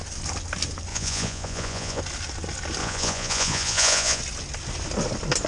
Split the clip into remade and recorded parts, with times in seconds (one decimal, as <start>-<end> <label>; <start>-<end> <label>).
0.0-0.9 recorded; 0.9-2.0 remade; 2.0-2.8 recorded; 2.8-4.2 remade; 4.2-5.5 recorded